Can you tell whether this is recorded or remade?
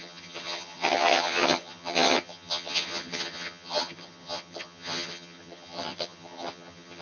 remade